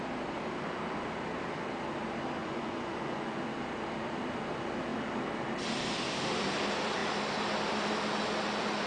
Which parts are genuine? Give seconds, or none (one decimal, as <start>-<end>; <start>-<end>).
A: 0.0-2.4; 3.4-8.9